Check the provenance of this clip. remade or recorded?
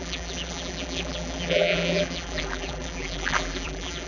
remade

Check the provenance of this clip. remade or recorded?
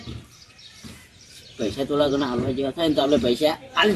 remade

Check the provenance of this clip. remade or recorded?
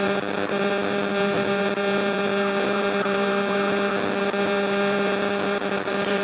remade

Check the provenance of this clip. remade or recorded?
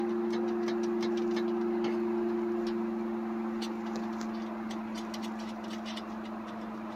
recorded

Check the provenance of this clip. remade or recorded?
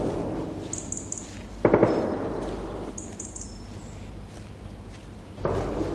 recorded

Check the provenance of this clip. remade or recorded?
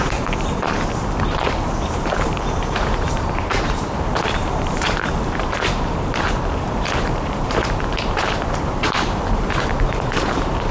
remade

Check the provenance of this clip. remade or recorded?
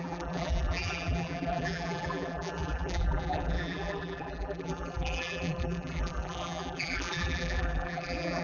remade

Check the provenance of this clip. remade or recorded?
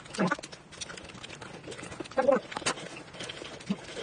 recorded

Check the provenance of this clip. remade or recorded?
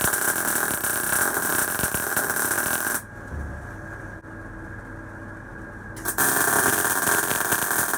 recorded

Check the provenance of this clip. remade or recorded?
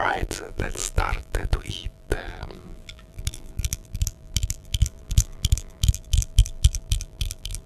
remade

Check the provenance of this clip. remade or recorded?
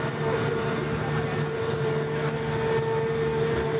recorded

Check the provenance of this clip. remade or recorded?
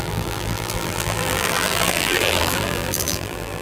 remade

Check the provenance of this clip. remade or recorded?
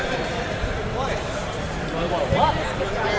remade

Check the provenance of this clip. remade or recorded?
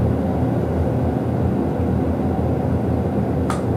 recorded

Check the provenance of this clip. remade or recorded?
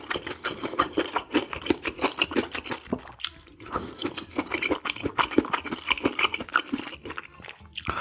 remade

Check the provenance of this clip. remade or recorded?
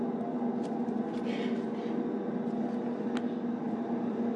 recorded